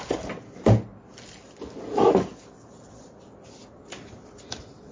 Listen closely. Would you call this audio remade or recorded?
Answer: recorded